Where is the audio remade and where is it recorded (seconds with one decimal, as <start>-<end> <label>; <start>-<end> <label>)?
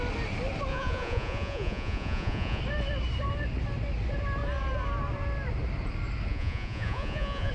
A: 0.0-0.7 recorded; 0.7-2.6 remade; 2.6-6.3 recorded; 6.3-7.5 remade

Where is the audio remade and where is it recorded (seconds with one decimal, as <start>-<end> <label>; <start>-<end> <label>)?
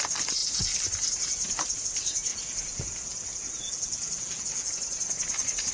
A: 0.0-2.3 recorded; 2.3-4.7 remade; 4.7-5.7 recorded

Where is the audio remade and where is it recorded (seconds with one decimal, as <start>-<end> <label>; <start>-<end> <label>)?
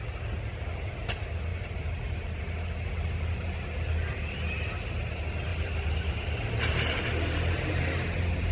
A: 0.0-1.5 recorded; 1.5-2.4 remade; 2.4-5.5 recorded; 5.5-6.4 remade; 6.4-8.5 recorded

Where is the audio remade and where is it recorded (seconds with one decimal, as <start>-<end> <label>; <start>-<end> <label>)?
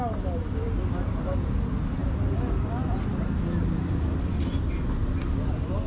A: 0.0-5.9 recorded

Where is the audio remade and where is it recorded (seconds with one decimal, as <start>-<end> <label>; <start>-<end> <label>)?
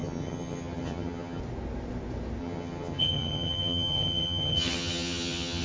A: 0.0-1.4 remade; 1.4-2.4 recorded; 2.4-5.6 remade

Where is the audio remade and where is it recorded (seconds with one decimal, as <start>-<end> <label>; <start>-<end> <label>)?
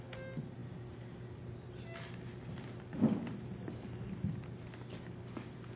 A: 0.0-5.8 recorded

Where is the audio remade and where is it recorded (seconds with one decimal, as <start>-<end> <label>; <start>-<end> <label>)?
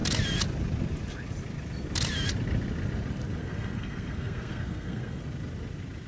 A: 0.0-3.4 recorded; 3.4-5.2 remade; 5.2-6.1 recorded